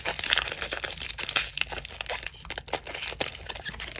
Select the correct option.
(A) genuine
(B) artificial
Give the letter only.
A